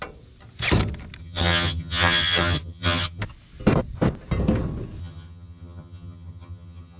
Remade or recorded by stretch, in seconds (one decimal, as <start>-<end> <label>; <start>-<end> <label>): 0.0-1.2 recorded; 1.2-3.2 remade; 3.2-5.0 recorded; 5.0-7.0 remade